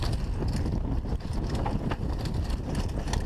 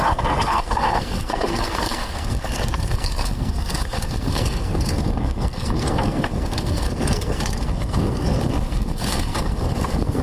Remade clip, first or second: second